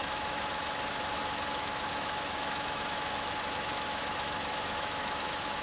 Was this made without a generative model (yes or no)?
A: no